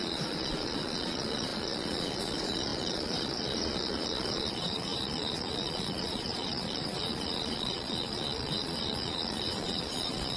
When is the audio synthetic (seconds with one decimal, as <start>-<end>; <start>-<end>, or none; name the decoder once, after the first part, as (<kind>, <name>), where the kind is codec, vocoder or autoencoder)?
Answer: 0.0-10.4 (vocoder, Vocos)